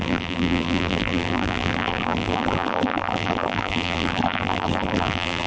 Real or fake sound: fake